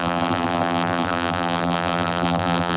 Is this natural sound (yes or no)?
no